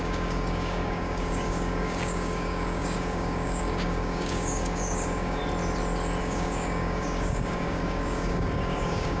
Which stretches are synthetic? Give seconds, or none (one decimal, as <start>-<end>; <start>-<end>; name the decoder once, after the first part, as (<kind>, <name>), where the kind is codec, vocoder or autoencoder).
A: 0.0-5.4 (codec, DAC); 6.2-9.2